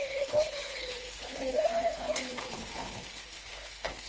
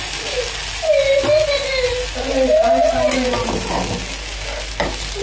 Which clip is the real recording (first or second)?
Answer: second